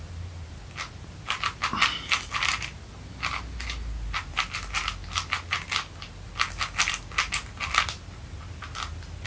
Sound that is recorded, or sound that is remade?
recorded